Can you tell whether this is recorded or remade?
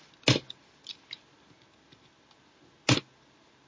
recorded